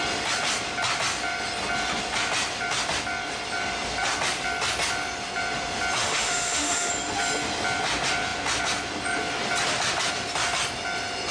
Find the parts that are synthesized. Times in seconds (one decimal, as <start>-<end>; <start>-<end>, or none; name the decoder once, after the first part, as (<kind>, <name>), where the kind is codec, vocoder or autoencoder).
6.0-6.9 (autoencoder, DAC-VAE)